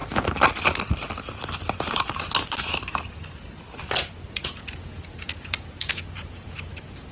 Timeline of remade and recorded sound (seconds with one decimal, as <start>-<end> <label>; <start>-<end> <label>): 0.0-4.3 recorded; 4.3-7.1 remade